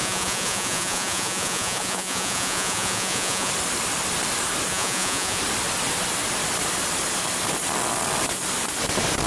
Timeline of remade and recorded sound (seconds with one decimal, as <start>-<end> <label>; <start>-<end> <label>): 0.0-3.5 remade; 3.5-4.7 recorded; 4.7-5.4 remade; 5.4-9.3 recorded